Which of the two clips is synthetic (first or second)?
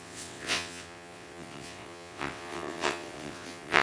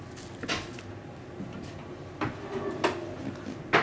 first